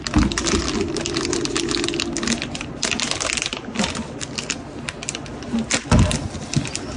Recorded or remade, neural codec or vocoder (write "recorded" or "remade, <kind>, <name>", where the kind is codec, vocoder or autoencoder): recorded